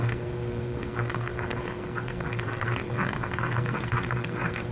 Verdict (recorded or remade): remade